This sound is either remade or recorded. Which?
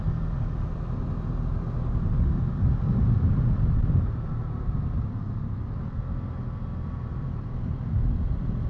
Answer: recorded